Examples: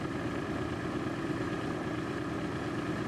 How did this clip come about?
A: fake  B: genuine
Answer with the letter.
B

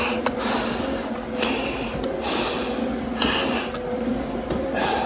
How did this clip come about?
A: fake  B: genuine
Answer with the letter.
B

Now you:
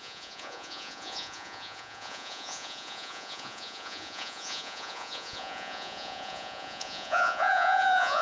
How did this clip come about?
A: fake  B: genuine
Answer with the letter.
A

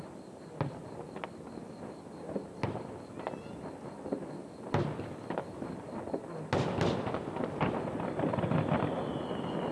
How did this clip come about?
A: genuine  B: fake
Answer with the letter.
A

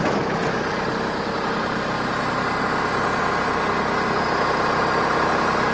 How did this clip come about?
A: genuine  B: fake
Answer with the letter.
A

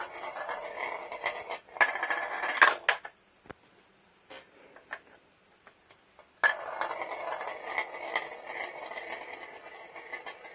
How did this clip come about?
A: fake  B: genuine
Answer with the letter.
B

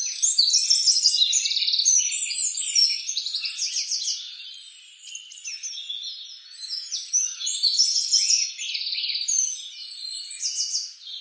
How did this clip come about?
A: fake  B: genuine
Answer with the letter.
B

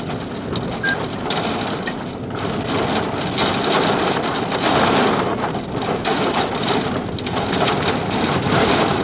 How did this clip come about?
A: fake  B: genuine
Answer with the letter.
B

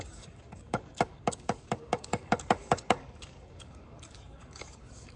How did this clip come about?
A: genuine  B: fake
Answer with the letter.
B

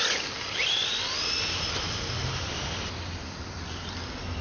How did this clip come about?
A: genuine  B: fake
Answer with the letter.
A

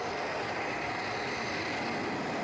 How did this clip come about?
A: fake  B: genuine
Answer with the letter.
B